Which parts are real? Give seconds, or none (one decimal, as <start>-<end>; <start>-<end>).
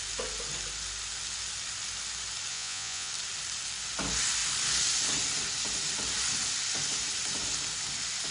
0.0-2.5; 3.1-8.3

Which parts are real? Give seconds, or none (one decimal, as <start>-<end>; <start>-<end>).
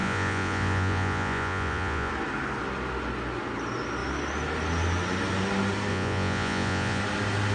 2.1-5.9; 7.0-7.5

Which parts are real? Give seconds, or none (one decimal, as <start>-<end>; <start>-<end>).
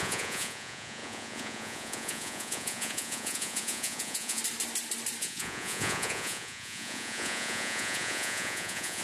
4.4-5.2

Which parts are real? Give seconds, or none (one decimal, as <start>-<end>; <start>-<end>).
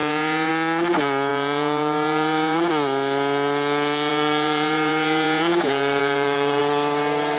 0.5-1.3; 2.7-4.1; 6.6-7.4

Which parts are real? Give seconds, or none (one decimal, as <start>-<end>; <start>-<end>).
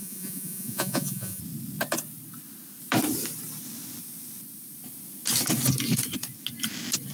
1.4-7.1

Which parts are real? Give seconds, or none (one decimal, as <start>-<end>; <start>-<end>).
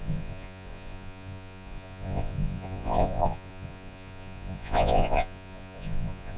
none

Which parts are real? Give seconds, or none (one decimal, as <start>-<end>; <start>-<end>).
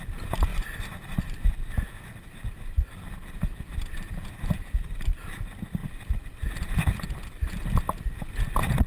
0.0-8.9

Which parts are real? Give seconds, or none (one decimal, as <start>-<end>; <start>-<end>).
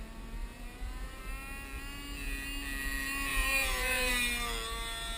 0.0-0.4; 1.2-3.3; 4.1-5.2